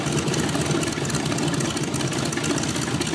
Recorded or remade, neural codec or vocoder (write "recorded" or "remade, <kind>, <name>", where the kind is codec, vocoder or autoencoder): recorded